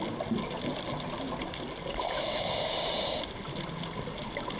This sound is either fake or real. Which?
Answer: real